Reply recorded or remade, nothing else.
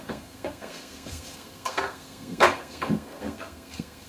remade